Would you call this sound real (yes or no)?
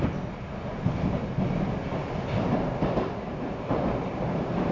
yes